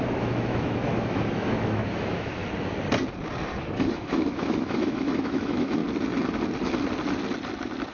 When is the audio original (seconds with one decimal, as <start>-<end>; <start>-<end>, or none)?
2.4-3.6; 5.8-7.9